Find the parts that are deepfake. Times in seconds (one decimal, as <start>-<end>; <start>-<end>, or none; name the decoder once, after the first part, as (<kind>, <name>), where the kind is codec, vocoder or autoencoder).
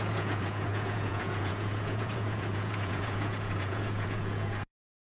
0.0-5.2 (vocoder, Vocos)